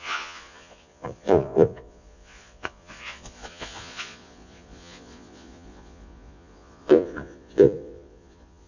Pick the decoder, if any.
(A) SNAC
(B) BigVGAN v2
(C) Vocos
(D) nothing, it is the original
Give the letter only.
C